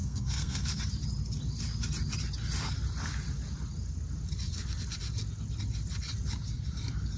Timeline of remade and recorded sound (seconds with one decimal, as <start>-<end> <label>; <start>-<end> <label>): 0.0-0.8 remade; 0.8-7.2 recorded